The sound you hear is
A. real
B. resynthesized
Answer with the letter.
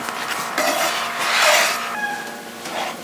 A